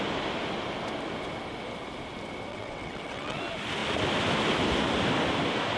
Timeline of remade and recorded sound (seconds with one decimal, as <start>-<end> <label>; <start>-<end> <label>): 0.0-2.5 recorded; 2.5-3.4 remade; 3.4-5.8 recorded